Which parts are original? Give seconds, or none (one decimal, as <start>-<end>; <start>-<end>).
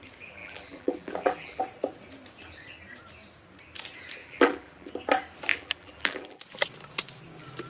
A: 0.0-0.4; 1.6-4.2; 4.9-5.5; 6.4-7.7